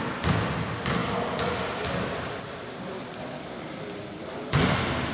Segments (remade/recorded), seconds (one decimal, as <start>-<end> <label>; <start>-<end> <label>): 0.0-5.1 recorded